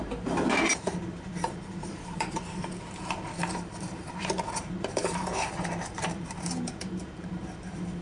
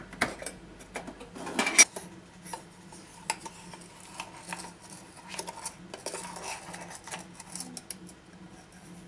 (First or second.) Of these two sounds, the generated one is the first